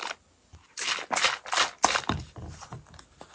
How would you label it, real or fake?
real